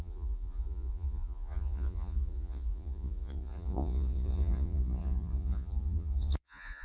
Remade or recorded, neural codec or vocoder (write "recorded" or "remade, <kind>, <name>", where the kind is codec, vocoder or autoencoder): remade, vocoder, Vocos